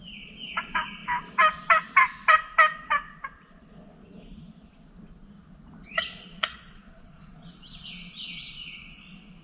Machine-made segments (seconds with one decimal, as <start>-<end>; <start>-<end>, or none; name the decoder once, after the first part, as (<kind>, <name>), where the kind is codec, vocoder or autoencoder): 5.8-8.7 (vocoder, Vocos)